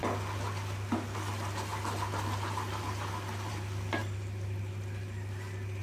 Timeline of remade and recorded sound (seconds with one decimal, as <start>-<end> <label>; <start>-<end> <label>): 0.0-5.8 recorded